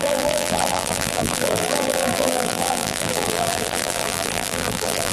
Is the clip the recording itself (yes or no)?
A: no